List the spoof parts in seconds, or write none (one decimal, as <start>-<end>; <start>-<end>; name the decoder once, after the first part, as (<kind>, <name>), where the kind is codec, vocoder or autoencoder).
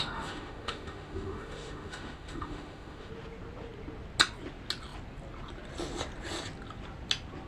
0.0-3.1 (autoencoder, DAC-VAE)